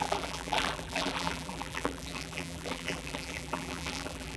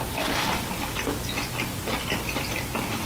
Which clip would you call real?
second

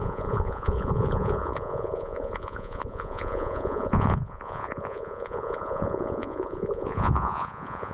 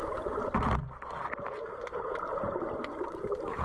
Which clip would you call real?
second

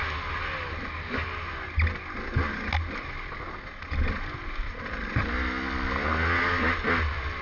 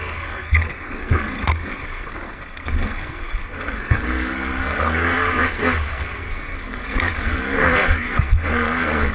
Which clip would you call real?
first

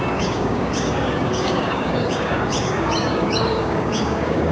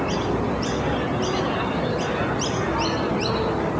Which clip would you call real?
second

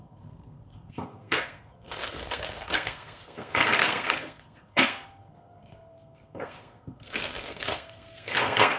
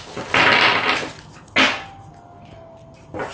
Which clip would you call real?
second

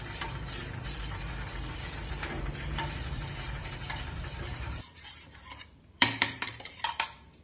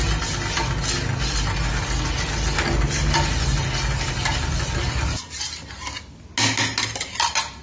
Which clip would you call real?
second